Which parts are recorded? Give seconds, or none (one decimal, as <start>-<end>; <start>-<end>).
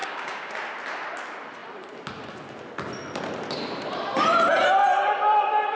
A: 0.5-5.8